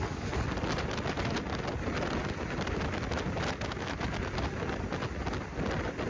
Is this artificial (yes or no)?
no